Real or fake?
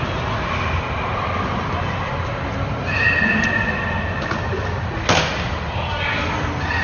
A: real